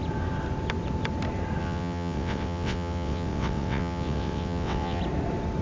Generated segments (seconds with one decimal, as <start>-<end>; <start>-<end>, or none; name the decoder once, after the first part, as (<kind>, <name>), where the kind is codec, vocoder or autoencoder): 1.6-5.0 (vocoder, WaveNeXt)